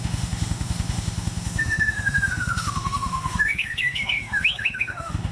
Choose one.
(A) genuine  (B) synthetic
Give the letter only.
B